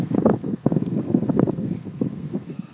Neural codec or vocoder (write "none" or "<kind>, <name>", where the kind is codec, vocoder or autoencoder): codec, SNAC